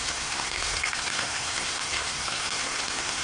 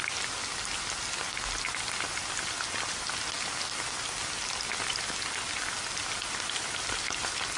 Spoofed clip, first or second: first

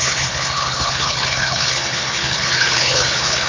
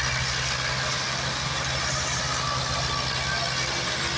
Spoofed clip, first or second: first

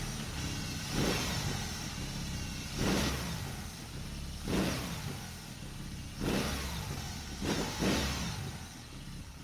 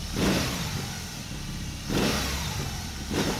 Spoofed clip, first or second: second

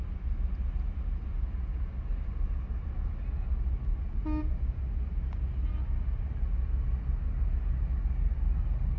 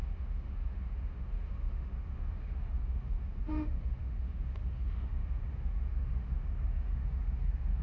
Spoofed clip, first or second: second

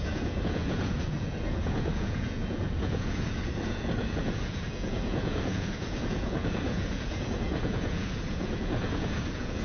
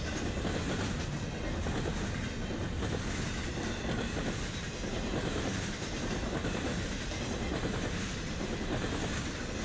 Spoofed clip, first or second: first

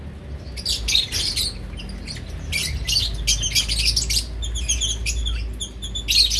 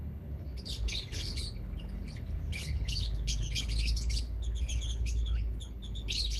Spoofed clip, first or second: second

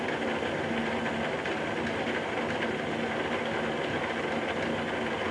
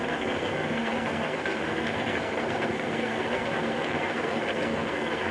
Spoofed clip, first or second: second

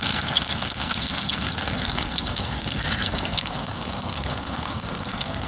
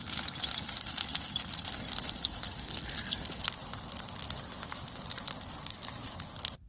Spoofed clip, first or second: first